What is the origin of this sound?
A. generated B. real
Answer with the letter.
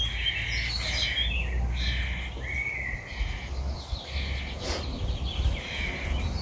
B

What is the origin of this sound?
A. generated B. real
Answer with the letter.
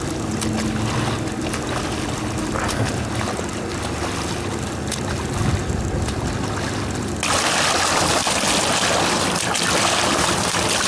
B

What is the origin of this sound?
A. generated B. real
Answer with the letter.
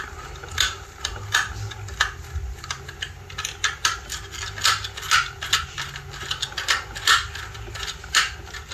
B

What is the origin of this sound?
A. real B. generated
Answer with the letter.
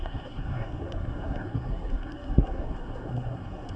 B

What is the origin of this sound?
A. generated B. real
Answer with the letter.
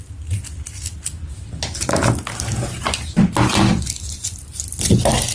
B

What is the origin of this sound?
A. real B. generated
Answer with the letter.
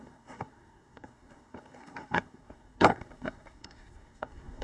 B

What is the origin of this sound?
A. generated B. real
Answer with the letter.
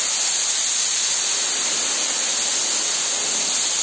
B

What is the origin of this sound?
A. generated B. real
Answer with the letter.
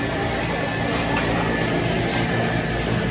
B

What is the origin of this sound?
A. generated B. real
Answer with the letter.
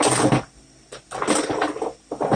B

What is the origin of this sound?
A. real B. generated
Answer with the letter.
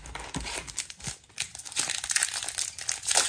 A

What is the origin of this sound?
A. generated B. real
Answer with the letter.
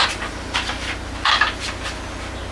B